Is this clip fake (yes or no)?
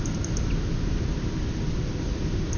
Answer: no